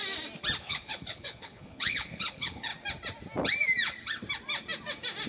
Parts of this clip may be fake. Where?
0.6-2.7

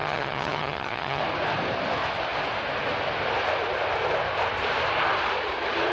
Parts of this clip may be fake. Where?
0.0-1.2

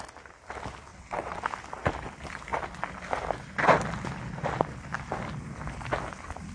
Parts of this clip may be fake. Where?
0.9-1.4